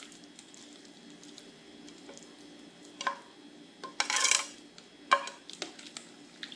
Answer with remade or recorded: recorded